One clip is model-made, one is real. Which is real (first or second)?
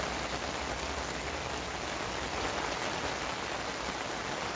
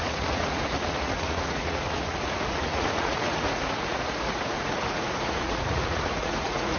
first